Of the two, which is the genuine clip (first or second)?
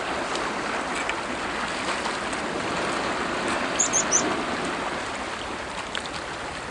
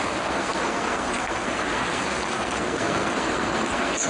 first